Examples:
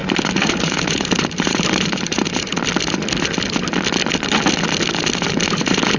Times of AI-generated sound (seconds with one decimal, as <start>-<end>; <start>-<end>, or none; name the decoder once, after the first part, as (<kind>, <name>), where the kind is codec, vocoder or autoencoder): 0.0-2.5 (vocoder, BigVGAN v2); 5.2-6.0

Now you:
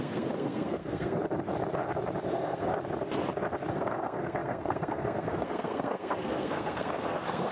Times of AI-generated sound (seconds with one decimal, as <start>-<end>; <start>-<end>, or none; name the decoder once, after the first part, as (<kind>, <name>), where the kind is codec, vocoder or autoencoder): 0.0-1.2 (codec, SNAC); 2.2-2.7; 3.7-7.5

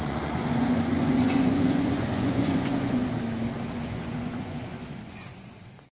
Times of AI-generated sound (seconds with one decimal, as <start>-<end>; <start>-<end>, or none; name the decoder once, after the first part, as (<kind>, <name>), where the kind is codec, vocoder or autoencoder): 0.0-3.0 (vocoder, Vocos); 3.7-5.9